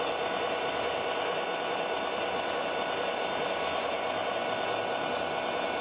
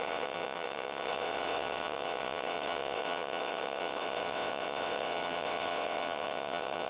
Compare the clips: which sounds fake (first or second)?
second